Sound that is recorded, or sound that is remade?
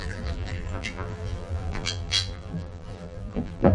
remade